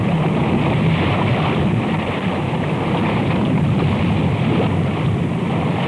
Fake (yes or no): yes